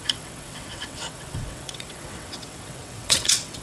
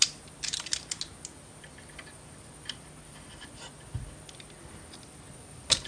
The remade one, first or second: first